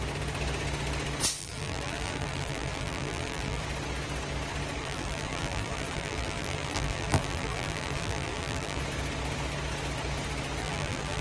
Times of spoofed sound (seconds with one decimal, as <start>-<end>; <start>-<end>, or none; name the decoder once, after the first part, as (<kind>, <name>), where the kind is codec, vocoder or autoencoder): 1.4-3.6 (vocoder, BigVGAN v2); 4.8-8.8; 10.6-11.2